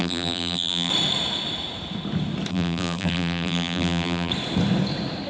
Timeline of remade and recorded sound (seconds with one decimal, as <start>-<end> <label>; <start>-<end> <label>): 0.0-0.9 remade; 0.9-2.5 recorded; 2.5-4.3 remade; 4.3-5.3 recorded